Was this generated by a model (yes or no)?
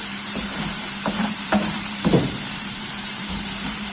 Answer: yes